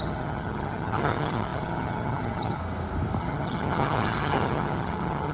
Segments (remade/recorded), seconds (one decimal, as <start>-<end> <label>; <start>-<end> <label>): 0.0-2.6 remade; 2.6-3.2 recorded; 3.2-5.3 remade